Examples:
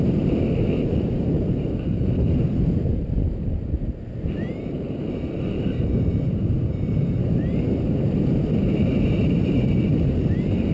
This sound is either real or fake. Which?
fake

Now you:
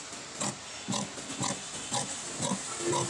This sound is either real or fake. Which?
real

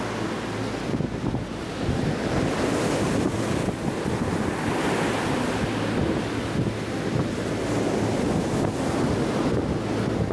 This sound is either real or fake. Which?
real